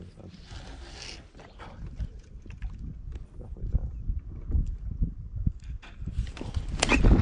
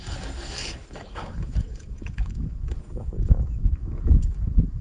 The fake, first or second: second